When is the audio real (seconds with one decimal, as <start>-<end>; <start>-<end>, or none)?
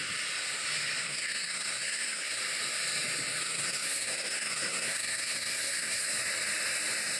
0.0-1.0; 2.4-3.4; 6.0-7.2